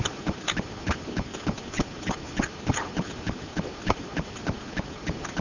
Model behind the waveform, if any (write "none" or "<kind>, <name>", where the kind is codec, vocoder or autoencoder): none